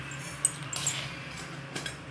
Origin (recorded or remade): recorded